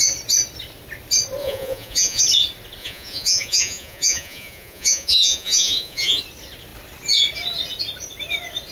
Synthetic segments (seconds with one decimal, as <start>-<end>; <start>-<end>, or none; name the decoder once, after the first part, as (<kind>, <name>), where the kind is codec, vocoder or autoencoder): 1.4-2.2 (vocoder, Vocos); 2.8-6.2